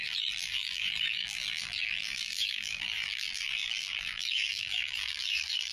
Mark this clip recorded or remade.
remade